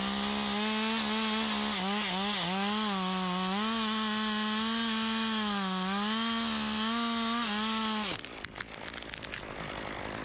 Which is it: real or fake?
real